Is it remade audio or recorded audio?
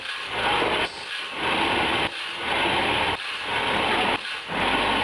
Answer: recorded